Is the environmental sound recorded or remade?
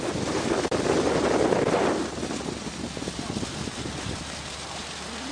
recorded